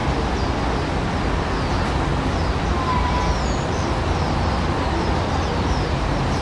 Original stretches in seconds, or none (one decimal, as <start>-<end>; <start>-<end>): 0.0-1.7; 2.1-5.5